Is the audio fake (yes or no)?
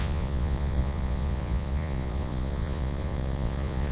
yes